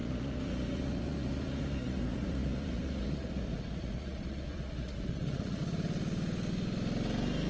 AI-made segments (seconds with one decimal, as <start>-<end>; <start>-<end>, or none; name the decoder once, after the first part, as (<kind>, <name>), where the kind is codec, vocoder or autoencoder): 0.0-5.6 (vocoder, Vocos)